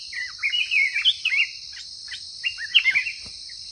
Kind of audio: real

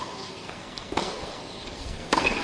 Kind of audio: fake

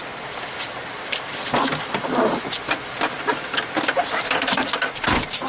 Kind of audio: real